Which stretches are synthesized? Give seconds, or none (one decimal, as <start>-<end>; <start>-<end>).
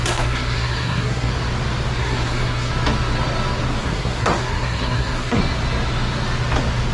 0.0-1.3; 2.0-2.7; 3.8-5.4